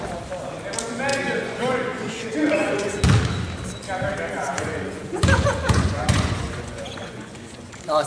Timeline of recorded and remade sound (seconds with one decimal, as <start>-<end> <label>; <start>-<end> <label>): 0.0-1.1 recorded; 1.1-3.0 remade; 3.0-4.5 recorded; 4.5-8.1 remade